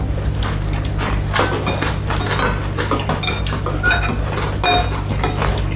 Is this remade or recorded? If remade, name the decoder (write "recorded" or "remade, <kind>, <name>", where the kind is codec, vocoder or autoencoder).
recorded